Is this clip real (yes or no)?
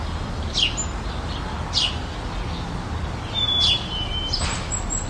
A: yes